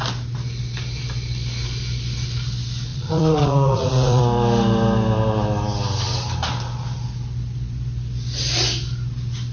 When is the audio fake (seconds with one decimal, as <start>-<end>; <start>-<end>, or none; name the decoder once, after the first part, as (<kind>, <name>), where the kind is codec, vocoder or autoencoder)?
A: 2.9-4.2 (vocoder, Vocos)